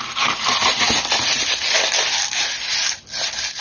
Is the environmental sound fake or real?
real